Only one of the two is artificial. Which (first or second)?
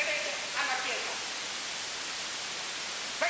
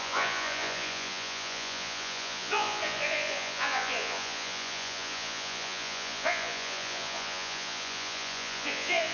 second